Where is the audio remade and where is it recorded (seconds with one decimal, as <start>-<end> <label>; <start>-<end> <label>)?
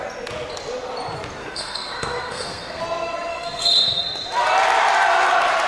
0.0-1.4 recorded; 1.4-2.8 remade; 2.8-3.3 recorded; 3.3-4.0 remade; 4.0-5.7 recorded